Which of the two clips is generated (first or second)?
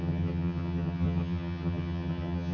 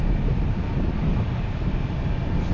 first